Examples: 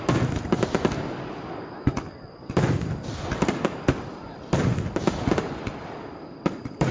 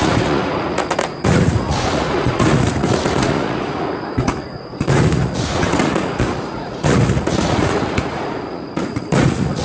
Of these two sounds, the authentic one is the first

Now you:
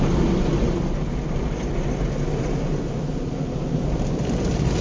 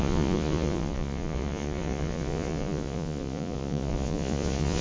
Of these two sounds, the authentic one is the first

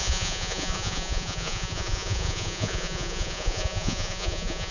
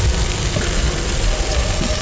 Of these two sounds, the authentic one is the second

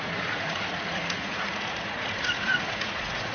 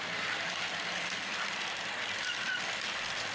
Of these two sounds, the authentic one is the second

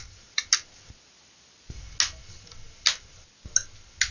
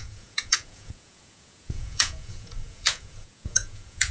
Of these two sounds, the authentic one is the first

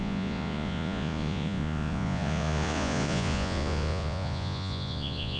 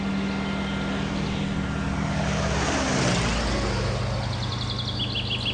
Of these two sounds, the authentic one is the second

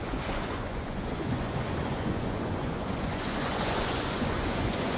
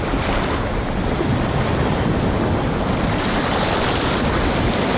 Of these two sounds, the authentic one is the second